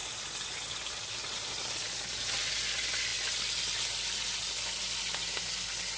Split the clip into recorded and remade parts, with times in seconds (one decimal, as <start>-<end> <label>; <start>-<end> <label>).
0.0-6.0 recorded